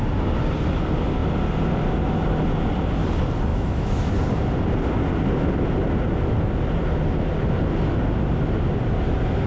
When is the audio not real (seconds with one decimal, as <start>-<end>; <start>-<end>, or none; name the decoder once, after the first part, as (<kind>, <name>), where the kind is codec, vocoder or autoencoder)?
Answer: 3.5-4.1 (autoencoder, DAC-VAE)